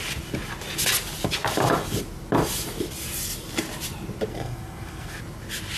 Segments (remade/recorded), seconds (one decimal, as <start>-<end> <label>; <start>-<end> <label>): 0.0-4.3 recorded; 4.3-5.2 remade; 5.2-5.8 recorded